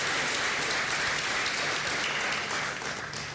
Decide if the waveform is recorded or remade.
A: recorded